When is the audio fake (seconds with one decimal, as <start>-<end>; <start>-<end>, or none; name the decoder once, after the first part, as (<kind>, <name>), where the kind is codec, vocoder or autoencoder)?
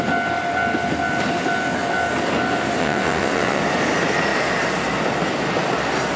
2.8-3.6 (vocoder, WaveNeXt)